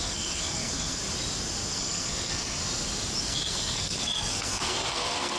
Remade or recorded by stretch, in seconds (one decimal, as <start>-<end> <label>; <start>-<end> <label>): 0.0-1.0 remade; 1.0-1.7 recorded; 1.7-2.6 remade; 2.6-3.2 recorded; 3.2-5.4 remade